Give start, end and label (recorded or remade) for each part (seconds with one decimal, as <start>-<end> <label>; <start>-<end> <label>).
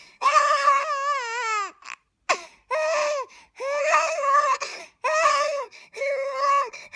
0.0-0.8 remade; 0.8-3.8 recorded; 3.8-4.8 remade; 4.8-5.3 recorded; 5.3-7.0 remade